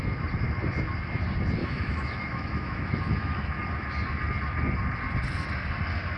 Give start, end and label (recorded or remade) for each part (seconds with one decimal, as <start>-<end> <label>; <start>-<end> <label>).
0.0-1.6 recorded; 1.6-3.6 remade; 3.6-6.2 recorded